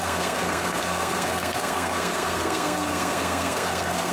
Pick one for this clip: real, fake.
fake